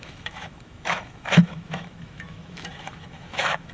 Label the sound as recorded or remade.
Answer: remade